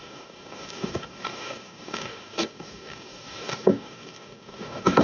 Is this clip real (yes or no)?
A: no